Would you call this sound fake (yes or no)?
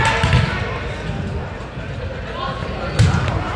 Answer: no